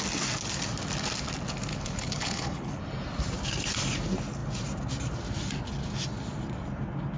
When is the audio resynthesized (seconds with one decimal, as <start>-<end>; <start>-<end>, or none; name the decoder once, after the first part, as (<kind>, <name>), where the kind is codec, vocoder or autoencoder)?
1.7-2.8 (codec, HILCodec)